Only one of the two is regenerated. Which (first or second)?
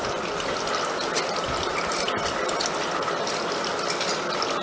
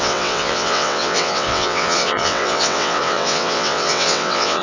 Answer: second